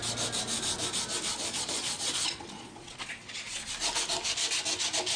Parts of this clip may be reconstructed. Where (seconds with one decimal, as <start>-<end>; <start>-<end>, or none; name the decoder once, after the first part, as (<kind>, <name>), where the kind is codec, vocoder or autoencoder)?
1.3-3.7 (vocoder, Vocos)